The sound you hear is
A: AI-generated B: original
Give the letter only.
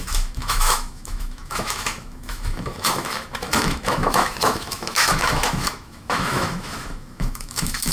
A